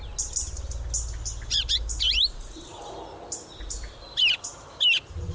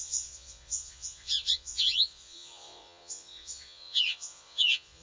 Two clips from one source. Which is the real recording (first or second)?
first